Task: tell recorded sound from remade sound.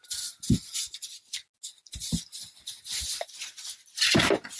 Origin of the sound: recorded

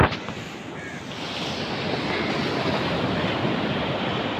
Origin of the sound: recorded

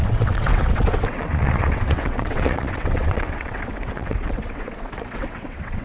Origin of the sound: remade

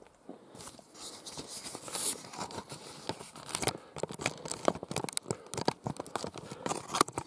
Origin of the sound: recorded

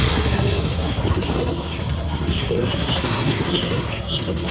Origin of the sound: remade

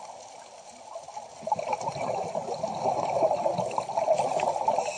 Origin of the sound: recorded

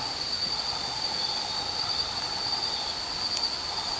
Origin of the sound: recorded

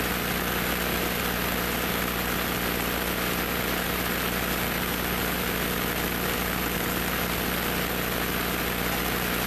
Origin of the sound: recorded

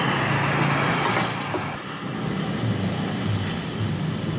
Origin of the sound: recorded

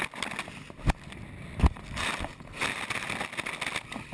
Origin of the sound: recorded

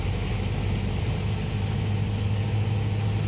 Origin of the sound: recorded